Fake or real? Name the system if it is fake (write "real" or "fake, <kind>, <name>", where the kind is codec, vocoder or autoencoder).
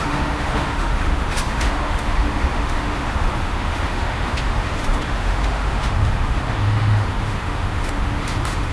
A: fake, autoencoder, DAC-VAE